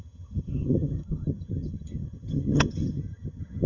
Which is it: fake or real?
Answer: fake